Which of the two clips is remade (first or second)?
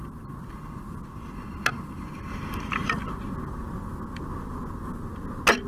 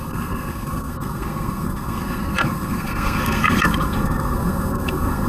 second